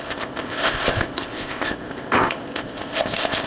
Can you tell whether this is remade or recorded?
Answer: remade